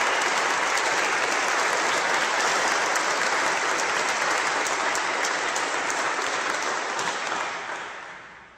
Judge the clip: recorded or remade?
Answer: recorded